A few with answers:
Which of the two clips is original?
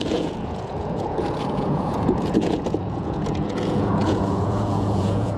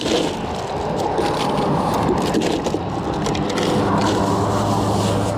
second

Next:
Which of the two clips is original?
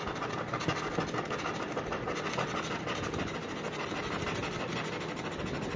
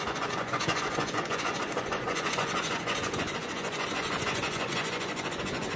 first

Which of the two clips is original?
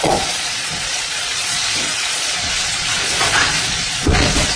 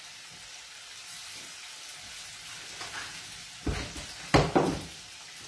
second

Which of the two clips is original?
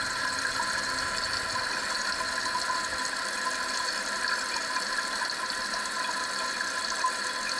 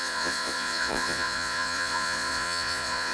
first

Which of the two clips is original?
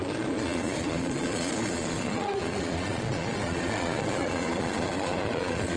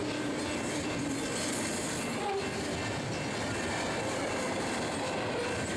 second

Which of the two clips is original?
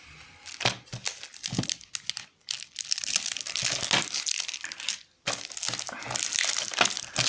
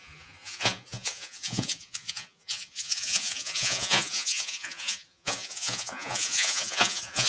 first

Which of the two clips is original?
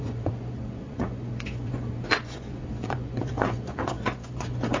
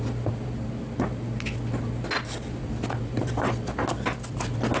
second